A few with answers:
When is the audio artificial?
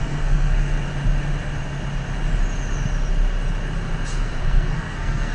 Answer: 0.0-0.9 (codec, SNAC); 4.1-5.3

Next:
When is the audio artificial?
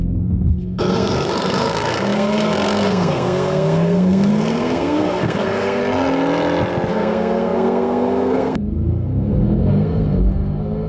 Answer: 0.0-5.8 (codec, SNAC); 6.9-10.9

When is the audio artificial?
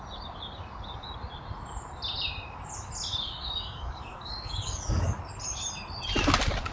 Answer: 3.1-5.2 (codec, DAC)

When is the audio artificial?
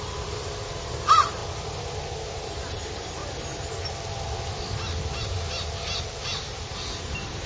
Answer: 0.0-1.4 (vocoder, BigVGAN v2); 2.5-3.2; 6.9-7.5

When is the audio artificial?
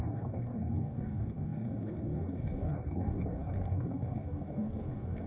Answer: 0.0-5.3 (codec, DAC)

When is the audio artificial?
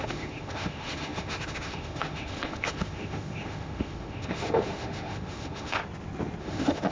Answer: 0.0-5.8 (autoencoder, DAC-VAE); 6.4-6.9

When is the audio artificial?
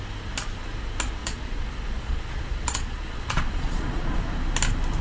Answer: 1.2-4.2 (vocoder, Vocos)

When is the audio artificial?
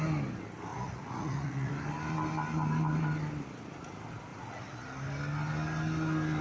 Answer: 0.7-1.7 (vocoder, Vocos); 4.3-4.8